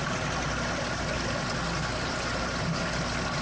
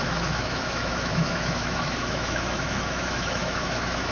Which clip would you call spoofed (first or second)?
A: second